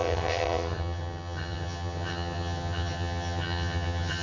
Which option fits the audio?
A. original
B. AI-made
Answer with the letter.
B